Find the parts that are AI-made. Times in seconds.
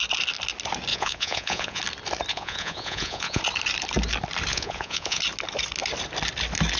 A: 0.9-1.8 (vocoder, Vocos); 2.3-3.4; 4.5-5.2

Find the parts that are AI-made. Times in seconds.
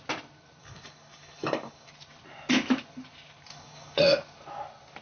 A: 0.6-1.9 (codec, DAC); 3.5-4.0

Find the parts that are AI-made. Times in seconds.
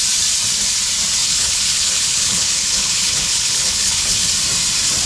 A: 1.2-4.3 (codec, HILCodec)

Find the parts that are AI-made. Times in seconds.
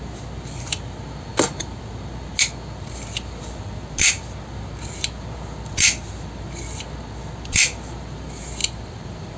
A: 8.6-9.4 (vocoder, BigVGAN v2)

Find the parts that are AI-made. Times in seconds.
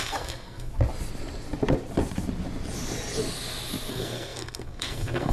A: 0.0-0.7 (codec, SNAC); 3.9-5.3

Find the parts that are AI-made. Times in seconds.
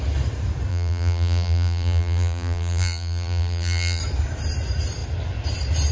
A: 0.7-4.0 (vocoder, BigVGAN v2)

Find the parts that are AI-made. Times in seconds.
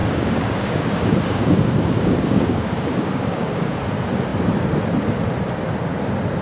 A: 0.0-3.8 (codec, DAC)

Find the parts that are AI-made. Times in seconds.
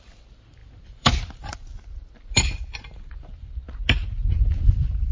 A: 0.6-1.3 (vocoder, BigVGAN v2)